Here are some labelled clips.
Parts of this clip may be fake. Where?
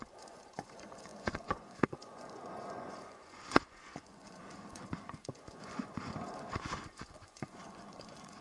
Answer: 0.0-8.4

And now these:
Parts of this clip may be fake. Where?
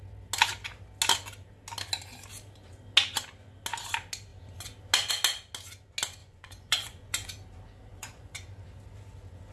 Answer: 6.2-7.3; 7.9-8.4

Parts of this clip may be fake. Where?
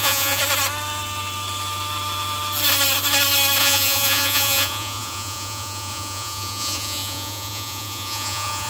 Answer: 0.0-0.4; 3.6-8.7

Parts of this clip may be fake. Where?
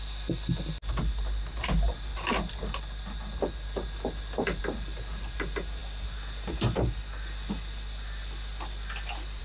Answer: none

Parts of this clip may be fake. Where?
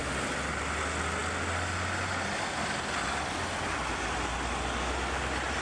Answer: none